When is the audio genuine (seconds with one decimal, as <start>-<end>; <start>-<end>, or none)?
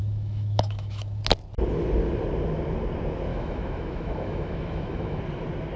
1.2-3.3; 5.2-5.8